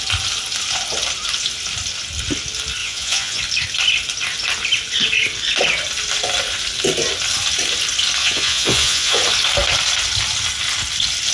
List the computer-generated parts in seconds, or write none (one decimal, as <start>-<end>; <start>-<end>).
2.8-3.4; 8.2-9.2